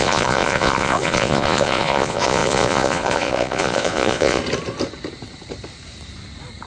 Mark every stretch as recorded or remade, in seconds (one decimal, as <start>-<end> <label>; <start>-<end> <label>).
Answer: 0.0-4.4 remade; 4.4-6.7 recorded